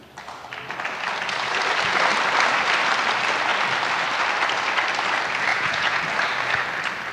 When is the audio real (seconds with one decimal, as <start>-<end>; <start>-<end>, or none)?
0.0-5.5; 6.0-7.1